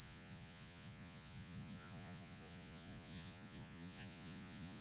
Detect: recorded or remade remade